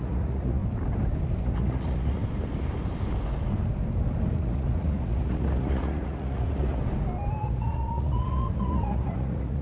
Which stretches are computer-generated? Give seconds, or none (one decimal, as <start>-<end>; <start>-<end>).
0.0-0.6; 1.4-2.2; 4.3-6.8; 7.4-9.6